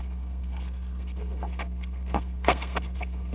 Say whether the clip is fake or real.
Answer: fake